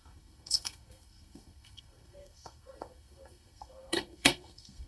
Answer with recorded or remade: remade